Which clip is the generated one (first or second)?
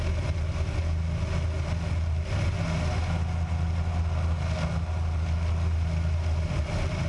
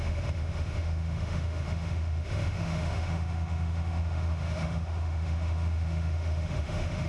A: second